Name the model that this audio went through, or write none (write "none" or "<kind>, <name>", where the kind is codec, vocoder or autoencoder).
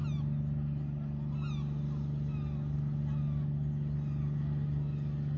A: none